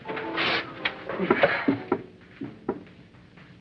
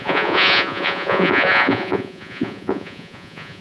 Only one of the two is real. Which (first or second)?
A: first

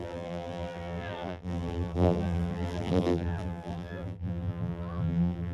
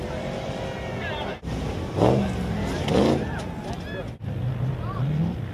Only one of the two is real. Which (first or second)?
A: second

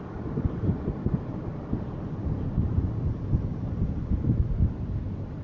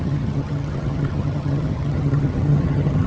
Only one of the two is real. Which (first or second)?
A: first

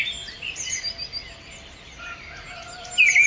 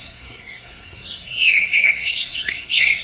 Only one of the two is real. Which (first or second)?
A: first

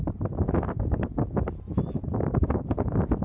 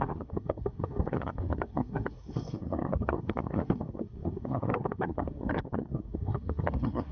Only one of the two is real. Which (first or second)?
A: first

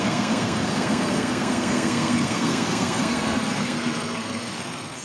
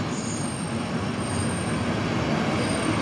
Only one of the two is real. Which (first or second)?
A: second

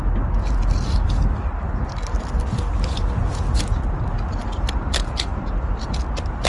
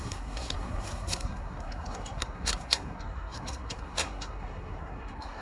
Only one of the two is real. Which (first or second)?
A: first